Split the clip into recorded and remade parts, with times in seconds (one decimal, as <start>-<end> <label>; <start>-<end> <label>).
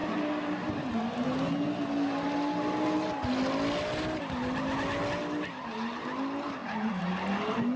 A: 0.0-7.8 recorded